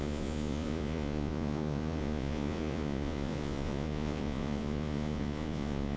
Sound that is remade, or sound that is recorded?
remade